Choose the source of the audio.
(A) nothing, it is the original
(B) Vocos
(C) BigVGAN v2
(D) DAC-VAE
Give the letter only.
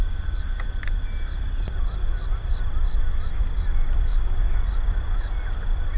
A